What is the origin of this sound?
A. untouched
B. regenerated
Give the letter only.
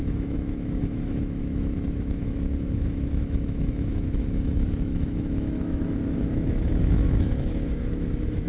B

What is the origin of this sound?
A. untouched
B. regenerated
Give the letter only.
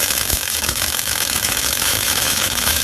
B